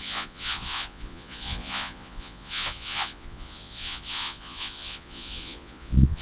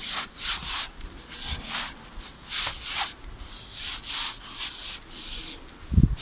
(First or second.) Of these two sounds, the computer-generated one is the first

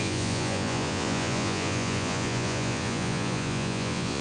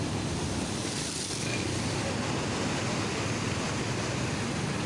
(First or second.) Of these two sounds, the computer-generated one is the first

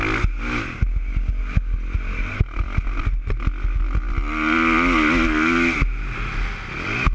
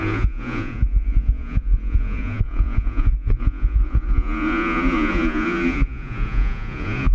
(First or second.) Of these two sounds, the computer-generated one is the second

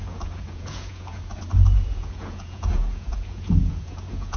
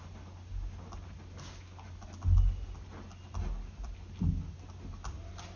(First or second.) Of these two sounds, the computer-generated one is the first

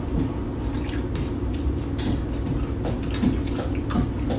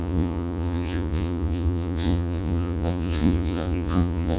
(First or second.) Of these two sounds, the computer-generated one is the second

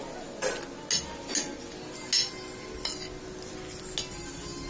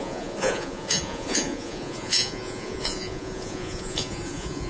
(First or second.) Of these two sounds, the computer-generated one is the second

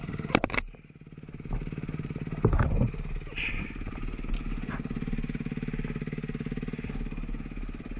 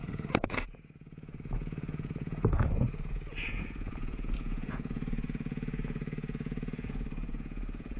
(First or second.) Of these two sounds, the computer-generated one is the second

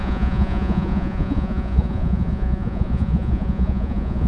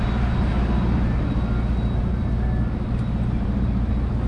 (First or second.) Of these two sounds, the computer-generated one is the first